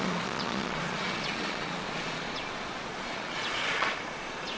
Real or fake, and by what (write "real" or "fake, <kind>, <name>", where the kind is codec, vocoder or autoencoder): fake, vocoder, Vocos